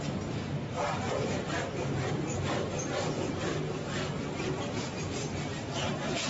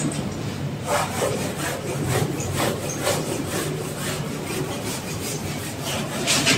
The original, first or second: first